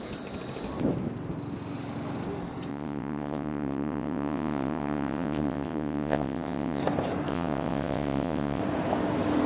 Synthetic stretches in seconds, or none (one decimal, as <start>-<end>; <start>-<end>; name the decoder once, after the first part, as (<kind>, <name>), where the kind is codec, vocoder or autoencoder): 2.7-6.8 (vocoder, WaveNeXt); 7.3-8.6